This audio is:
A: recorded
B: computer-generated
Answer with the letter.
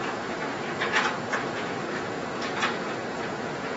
B